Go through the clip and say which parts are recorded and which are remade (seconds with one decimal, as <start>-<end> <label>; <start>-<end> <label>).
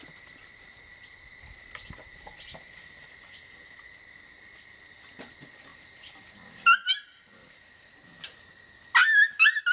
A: 0.0-9.7 recorded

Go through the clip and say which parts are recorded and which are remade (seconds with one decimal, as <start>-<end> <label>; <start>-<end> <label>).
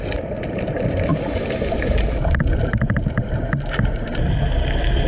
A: 0.0-1.1 recorded; 1.1-4.2 remade; 4.2-5.1 recorded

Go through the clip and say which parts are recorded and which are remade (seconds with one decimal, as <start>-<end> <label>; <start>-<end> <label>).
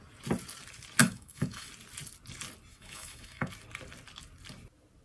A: 0.0-1.0 recorded; 1.0-1.7 remade; 1.7-2.7 recorded; 2.7-3.5 remade; 3.5-5.0 recorded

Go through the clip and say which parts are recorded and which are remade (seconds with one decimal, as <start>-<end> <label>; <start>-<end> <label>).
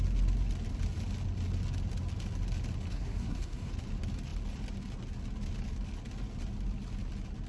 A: 0.0-2.9 recorded; 2.9-3.7 remade; 3.7-7.5 recorded